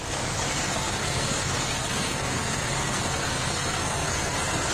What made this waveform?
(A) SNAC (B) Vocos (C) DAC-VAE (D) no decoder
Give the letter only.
A